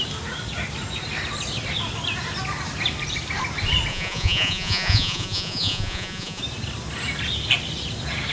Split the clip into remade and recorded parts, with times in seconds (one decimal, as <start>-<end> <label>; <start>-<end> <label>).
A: 0.0-3.9 recorded; 3.9-6.4 remade; 6.4-8.3 recorded